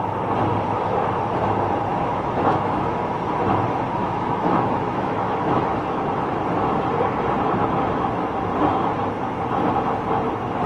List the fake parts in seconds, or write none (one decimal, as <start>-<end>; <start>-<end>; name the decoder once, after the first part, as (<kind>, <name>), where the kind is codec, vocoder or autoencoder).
1.9-3.1 (autoencoder, DAC-VAE); 4.0-6.0